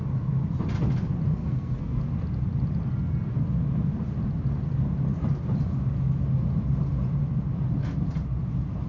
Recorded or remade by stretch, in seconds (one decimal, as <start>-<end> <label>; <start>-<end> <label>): 0.0-1.3 recorded; 1.3-2.0 remade; 2.0-8.9 recorded